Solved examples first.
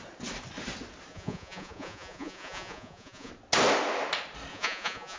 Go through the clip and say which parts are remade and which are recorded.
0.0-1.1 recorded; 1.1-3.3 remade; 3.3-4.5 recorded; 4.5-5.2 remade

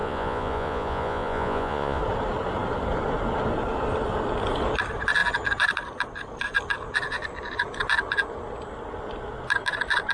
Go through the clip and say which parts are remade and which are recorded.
0.0-2.0 remade; 2.0-10.1 recorded

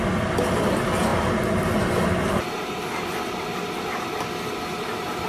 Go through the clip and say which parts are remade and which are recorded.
0.0-5.3 recorded